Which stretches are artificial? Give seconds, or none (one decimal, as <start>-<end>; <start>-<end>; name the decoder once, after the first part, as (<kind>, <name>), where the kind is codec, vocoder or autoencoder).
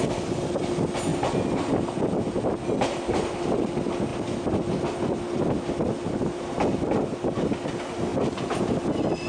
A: none